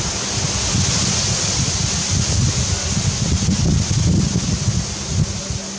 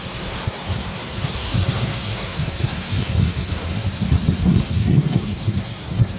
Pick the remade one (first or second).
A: second